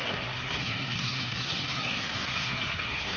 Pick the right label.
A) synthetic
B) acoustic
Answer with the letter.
A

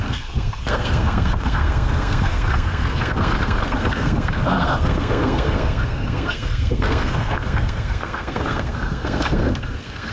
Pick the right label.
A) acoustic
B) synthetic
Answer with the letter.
B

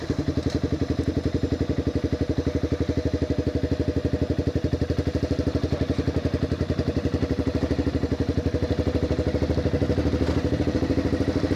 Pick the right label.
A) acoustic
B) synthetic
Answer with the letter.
A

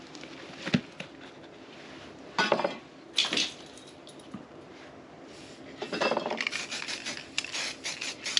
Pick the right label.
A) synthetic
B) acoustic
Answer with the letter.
B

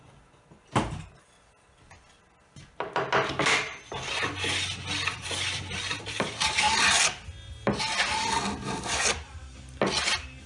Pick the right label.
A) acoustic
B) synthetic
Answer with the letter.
A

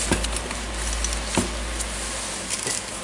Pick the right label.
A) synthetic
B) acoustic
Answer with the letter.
B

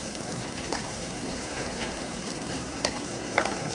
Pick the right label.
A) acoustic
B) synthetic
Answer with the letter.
B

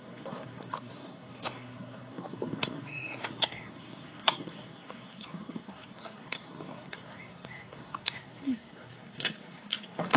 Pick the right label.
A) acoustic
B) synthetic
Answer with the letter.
B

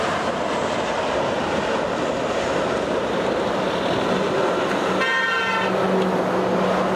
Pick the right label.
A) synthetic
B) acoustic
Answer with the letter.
B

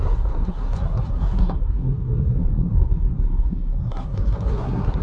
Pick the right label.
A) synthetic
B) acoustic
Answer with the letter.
A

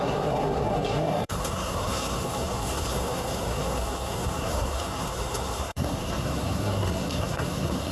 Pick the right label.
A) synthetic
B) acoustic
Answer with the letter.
A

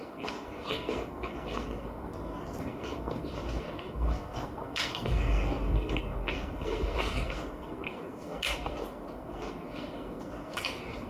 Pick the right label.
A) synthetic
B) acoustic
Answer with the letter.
A